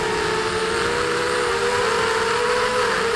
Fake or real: real